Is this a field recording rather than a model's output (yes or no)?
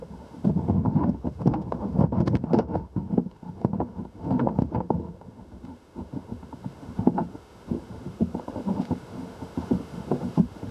no